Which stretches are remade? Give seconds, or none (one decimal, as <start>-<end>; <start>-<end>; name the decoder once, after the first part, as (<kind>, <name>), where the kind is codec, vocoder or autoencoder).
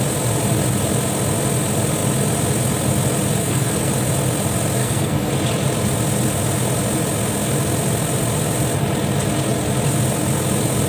3.4-3.9 (codec, SNAC); 4.8-5.3